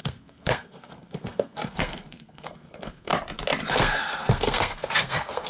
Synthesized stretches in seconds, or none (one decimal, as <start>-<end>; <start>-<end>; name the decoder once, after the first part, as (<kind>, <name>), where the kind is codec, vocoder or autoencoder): 0.0-3.1 (codec, SNAC); 3.7-5.5